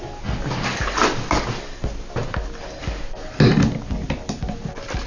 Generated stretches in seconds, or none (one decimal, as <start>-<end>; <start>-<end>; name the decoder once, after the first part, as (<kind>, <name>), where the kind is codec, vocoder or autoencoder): none